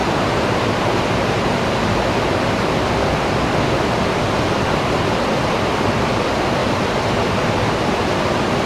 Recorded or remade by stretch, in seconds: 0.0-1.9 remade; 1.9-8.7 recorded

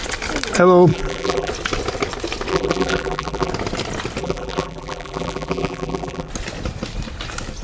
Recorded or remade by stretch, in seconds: 0.0-0.9 recorded; 0.9-1.5 remade; 1.5-2.5 recorded; 2.5-3.5 remade; 3.5-4.2 recorded; 4.2-6.3 remade; 6.3-7.6 recorded

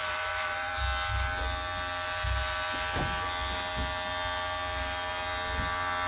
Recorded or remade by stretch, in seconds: 0.0-0.8 remade; 0.8-6.1 recorded

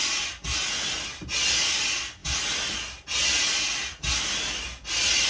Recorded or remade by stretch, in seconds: 0.0-5.3 recorded

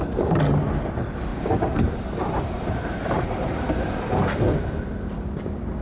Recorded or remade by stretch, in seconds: 0.0-1.3 recorded; 1.3-4.8 remade; 4.8-5.8 recorded

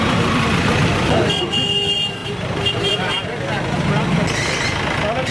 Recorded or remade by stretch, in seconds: 0.0-2.2 recorded; 2.2-3.4 remade; 3.4-5.3 recorded

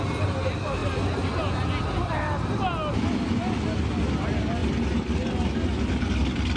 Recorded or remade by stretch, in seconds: 0.0-6.6 recorded

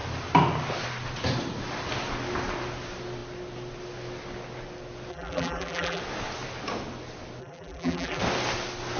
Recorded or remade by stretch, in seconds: 0.0-5.1 recorded; 5.1-6.0 remade; 6.0-7.4 recorded; 7.4-8.2 remade; 8.2-9.0 recorded